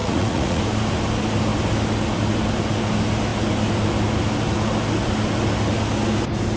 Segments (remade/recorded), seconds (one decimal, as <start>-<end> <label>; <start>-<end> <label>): 0.0-0.6 remade; 0.6-6.6 recorded